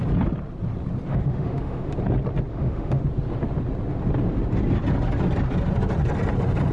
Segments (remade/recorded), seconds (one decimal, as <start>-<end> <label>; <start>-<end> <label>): 0.0-1.1 recorded; 1.1-1.9 remade; 1.9-2.5 recorded; 2.5-3.0 remade; 3.0-6.7 recorded